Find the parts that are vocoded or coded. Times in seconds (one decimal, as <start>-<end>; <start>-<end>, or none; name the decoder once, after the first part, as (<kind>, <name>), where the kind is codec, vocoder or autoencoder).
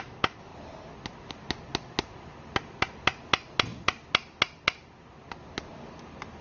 none